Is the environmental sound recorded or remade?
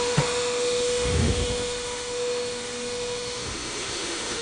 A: remade